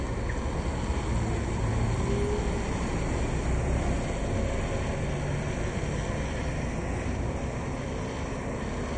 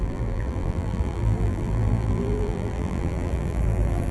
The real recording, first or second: first